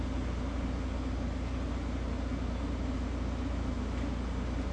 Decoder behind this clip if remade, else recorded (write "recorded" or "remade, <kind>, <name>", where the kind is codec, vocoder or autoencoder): recorded